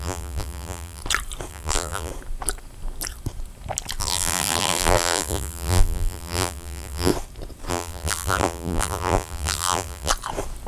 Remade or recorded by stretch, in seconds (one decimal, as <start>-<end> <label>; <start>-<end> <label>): 0.0-1.0 remade; 1.0-1.5 recorded; 1.5-2.1 remade; 2.1-4.0 recorded; 4.0-7.1 remade; 7.1-7.7 recorded; 7.7-10.1 remade; 10.1-10.7 recorded